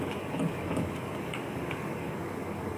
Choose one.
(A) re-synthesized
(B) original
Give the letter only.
A